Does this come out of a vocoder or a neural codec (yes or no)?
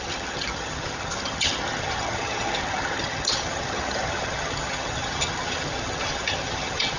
yes